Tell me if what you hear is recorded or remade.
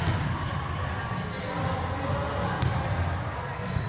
recorded